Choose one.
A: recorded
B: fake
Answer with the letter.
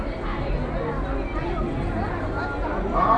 A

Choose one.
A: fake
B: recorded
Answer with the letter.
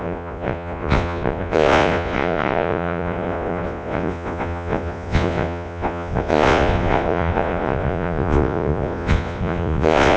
A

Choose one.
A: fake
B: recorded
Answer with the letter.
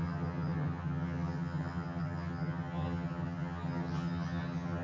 A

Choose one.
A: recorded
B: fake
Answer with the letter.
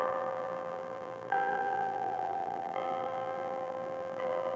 B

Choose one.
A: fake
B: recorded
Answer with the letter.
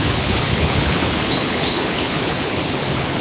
A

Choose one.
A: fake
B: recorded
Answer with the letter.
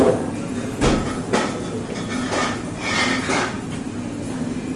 B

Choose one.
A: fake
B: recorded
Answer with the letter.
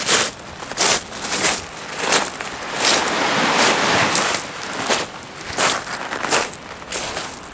B